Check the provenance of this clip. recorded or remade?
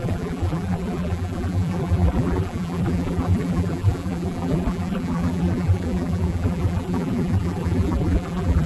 remade